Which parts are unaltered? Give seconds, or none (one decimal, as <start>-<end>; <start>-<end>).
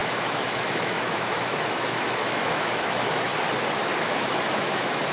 3.3-4.0